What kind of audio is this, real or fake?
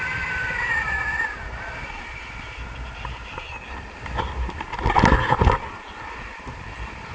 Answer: real